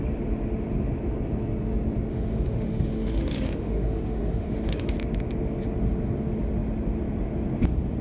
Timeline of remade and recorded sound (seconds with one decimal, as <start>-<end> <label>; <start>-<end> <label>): 0.0-2.1 recorded; 2.1-4.9 remade; 4.9-8.0 recorded